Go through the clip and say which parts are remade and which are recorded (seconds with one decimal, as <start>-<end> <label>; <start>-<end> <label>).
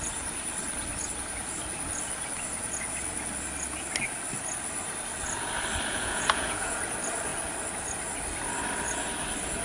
0.0-5.9 recorded; 5.9-6.8 remade; 6.8-9.6 recorded